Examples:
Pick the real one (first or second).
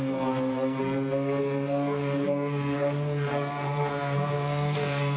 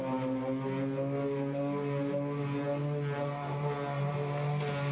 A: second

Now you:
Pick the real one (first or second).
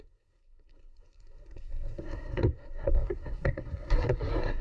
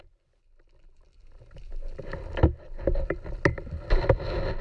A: second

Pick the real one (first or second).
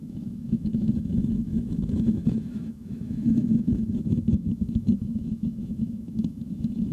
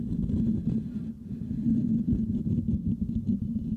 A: second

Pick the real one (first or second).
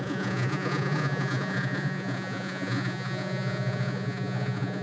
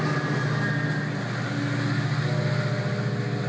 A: second